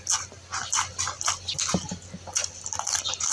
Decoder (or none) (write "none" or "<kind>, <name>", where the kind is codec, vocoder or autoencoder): none